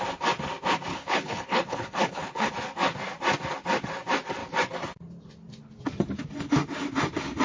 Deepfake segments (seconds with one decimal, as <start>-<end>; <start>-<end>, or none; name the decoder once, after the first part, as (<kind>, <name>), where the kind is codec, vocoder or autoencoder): 0.9-2.5 (codec, HILCodec)